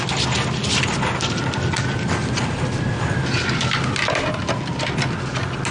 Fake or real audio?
real